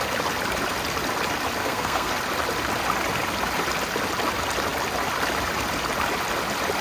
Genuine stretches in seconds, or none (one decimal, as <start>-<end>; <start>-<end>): 0.0-1.6; 2.1-6.8

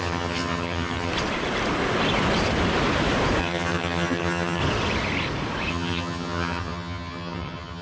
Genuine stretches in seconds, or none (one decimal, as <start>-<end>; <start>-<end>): 1.1-3.4; 4.6-5.7